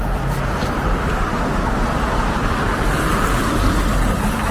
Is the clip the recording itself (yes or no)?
yes